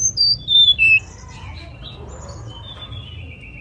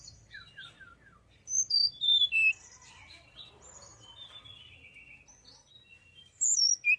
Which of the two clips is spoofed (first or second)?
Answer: second